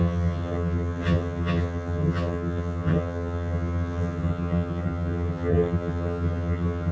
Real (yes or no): no